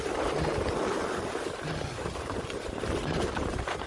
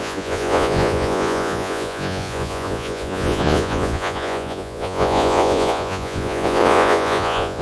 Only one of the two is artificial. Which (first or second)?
second